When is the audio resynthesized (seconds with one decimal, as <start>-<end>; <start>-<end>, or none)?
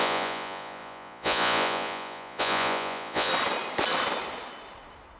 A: 0.0-3.3